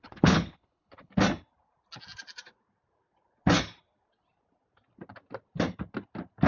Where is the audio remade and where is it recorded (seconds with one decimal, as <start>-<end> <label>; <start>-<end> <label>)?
0.0-1.1 remade; 1.1-6.5 recorded